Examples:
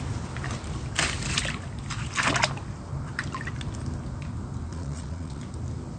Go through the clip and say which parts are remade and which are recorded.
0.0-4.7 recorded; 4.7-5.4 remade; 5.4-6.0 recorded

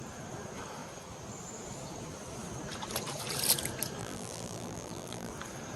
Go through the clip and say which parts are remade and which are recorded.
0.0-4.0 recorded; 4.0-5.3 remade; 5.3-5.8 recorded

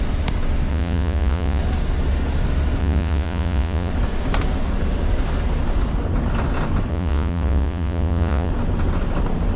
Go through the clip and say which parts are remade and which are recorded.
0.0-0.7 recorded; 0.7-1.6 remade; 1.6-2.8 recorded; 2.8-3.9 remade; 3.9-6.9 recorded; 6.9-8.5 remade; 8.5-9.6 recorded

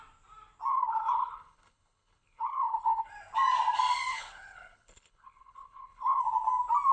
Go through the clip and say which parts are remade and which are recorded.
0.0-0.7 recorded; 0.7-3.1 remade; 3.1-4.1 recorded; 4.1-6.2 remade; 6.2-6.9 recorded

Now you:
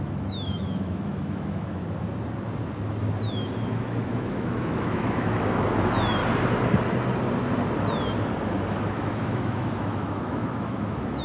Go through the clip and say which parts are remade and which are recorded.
0.0-1.8 remade; 1.8-3.3 recorded; 3.3-6.2 remade; 6.2-8.8 recorded; 8.8-11.2 remade

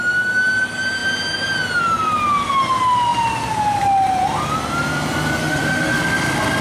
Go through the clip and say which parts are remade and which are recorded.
0.0-5.4 recorded; 5.4-6.0 remade; 6.0-6.6 recorded

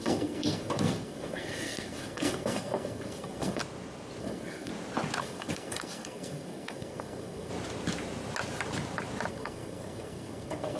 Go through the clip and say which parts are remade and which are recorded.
0.0-3.6 remade; 3.6-4.2 recorded; 4.2-4.7 remade; 4.7-5.2 recorded; 5.2-7.5 remade; 7.5-9.3 recorded; 9.3-10.8 remade